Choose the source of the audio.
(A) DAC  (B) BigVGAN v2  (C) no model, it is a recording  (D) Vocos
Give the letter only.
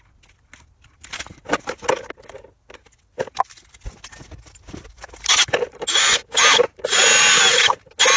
C